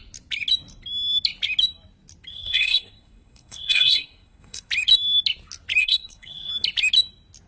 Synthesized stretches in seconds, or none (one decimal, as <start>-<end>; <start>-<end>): 2.3-4.7; 5.8-6.5